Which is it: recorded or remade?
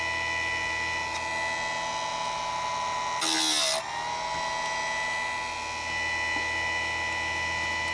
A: recorded